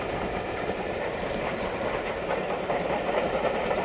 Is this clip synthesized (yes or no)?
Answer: no